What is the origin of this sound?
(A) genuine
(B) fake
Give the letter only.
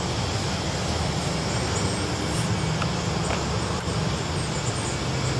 A